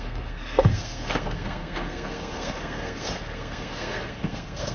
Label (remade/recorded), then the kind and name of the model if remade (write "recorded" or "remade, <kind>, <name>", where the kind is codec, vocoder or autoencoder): remade, codec, SNAC